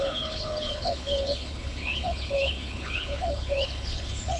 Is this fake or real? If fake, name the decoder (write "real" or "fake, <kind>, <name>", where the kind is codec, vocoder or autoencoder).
fake, codec, HILCodec